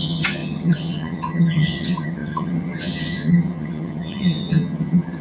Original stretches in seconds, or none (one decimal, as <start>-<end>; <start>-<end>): none